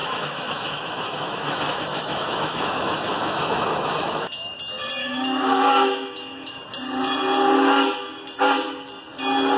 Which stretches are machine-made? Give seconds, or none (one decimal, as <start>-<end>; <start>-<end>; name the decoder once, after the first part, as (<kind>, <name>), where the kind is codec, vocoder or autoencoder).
0.0-4.6 (autoencoder, DAC-VAE); 5.0-6.6